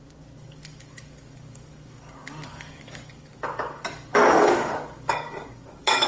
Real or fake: fake